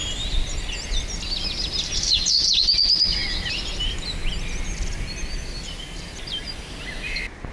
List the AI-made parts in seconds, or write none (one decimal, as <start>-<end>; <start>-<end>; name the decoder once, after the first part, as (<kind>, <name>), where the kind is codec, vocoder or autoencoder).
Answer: none